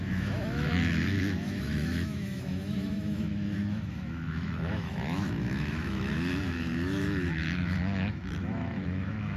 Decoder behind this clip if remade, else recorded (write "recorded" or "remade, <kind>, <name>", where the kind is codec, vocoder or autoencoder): remade, autoencoder, DAC-VAE